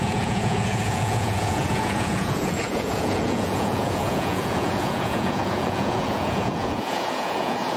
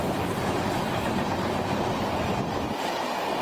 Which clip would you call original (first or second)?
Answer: second